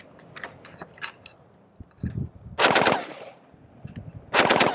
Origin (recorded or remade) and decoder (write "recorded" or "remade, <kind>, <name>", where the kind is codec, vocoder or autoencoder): recorded